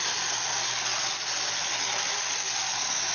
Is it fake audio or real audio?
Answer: real